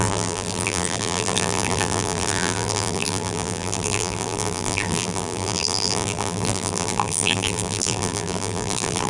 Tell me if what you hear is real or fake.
fake